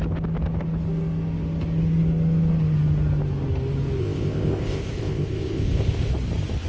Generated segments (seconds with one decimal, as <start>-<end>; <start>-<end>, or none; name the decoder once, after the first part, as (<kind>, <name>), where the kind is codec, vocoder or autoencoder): 4.0-6.1 (codec, ZipCodec)

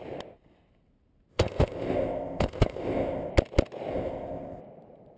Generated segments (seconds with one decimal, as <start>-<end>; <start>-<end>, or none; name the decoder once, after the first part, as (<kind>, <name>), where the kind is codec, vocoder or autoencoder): 1.3-3.3 (codec, ZipCodec); 3.9-4.6

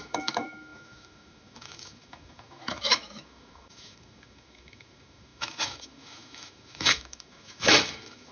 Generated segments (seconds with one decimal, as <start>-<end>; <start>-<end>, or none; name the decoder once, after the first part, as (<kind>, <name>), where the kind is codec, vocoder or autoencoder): 0.0-8.3 (autoencoder, DAC-VAE)

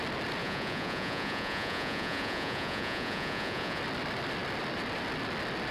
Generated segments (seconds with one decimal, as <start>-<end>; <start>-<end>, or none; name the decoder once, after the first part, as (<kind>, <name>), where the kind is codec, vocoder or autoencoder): 0.4-3.8 (vocoder, Vocos)

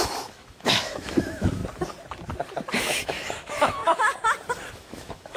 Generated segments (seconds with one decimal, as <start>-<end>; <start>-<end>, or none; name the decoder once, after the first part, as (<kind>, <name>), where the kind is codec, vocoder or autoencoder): 0.0-1.6 (autoencoder, DAC-VAE); 2.8-3.8; 4.7-5.4

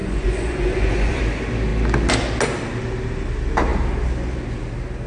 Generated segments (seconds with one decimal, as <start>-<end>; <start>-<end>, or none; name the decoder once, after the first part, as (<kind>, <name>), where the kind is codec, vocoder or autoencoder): 0.0-1.2 (vocoder, Vocos)

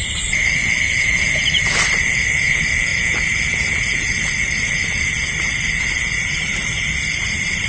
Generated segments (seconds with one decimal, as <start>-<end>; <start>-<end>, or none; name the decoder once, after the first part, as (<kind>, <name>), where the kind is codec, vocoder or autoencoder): 0.8-2.9 (vocoder, BigVGAN v2); 7.3-7.7

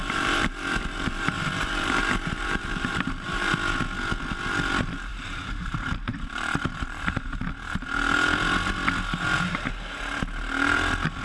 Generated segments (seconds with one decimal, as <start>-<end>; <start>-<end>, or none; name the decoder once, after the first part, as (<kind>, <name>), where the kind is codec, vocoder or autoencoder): 0.0-3.5 (vocoder, BigVGAN v2); 5.1-7.3